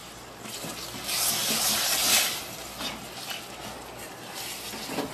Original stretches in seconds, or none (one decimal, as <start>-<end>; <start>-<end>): 0.0-1.4; 2.7-5.1